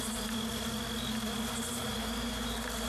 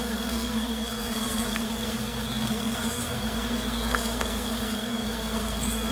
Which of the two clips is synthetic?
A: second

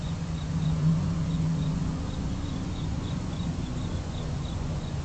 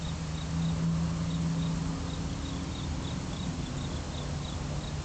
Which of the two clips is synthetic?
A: first